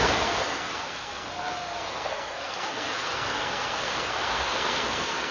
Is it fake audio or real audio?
fake